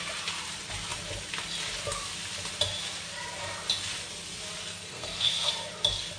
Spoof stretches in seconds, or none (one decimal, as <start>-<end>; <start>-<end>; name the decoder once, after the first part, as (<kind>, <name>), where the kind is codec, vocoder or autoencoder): 4.6-5.5 (codec, SNAC)